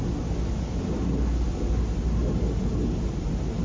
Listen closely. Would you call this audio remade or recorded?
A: recorded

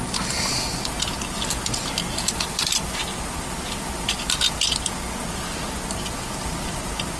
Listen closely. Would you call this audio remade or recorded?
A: recorded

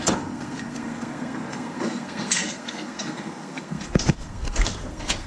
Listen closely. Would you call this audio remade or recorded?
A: remade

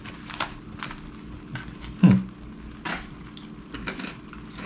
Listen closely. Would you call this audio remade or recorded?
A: recorded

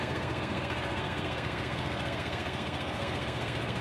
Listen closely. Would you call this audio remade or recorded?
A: remade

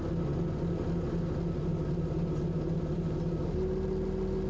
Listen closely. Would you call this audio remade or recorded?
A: recorded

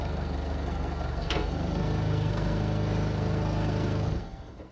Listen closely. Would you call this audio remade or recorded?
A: remade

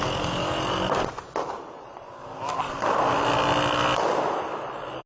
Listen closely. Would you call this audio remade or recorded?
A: recorded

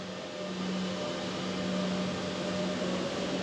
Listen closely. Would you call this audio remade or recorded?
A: recorded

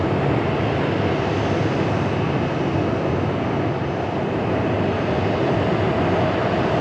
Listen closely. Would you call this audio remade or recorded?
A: recorded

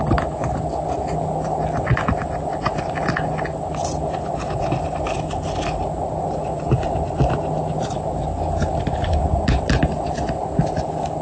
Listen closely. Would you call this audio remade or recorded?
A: recorded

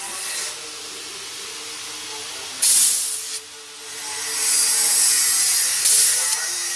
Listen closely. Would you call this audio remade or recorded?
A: recorded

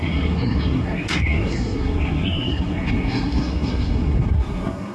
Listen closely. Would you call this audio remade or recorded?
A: remade